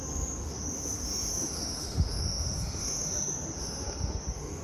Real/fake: fake